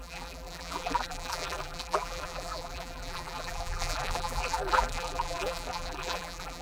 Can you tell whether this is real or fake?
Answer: fake